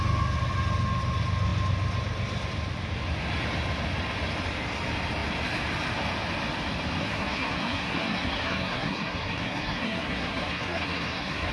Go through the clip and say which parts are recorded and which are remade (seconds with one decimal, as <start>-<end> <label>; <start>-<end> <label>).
0.0-7.0 recorded; 7.0-11.5 remade